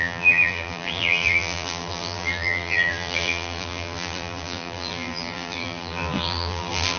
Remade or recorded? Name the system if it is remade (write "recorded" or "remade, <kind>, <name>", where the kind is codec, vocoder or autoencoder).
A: remade, vocoder, BigVGAN v2